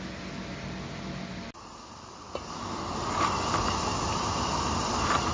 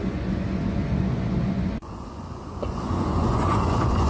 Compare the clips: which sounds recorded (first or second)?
first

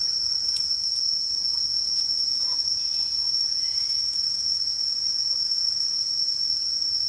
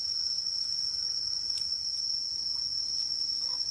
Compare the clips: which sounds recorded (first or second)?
second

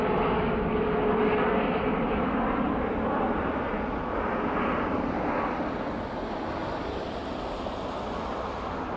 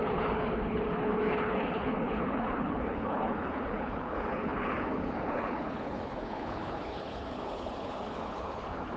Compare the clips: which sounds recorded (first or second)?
first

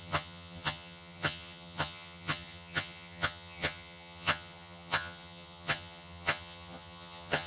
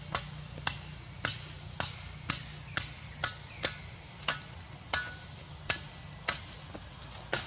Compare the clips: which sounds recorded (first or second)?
second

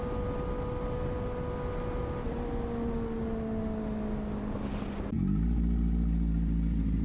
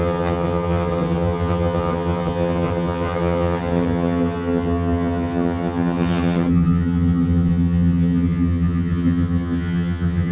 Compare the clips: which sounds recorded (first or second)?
first